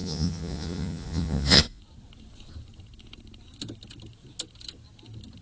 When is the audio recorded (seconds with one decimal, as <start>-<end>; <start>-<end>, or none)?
1.8-5.4